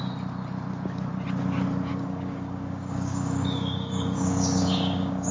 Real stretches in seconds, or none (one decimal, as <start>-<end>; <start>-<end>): 0.0-1.9